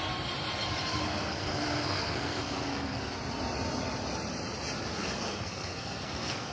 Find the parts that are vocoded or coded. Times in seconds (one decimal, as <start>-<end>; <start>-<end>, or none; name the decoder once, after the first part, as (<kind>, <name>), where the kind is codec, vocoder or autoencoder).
0.9-3.1 (codec, SNAC); 5.0-6.5